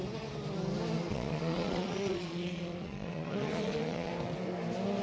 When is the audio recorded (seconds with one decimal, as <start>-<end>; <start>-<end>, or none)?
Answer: 0.0-1.1; 4.1-5.0